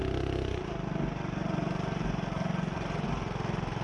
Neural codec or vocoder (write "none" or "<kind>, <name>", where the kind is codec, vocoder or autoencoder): none